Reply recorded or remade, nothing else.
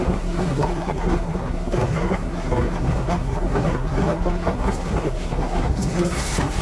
remade